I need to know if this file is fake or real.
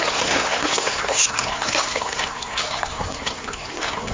fake